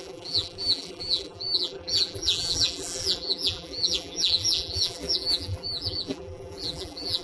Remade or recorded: remade